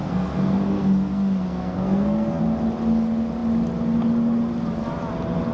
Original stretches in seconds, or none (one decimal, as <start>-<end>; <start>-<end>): 2.4-5.5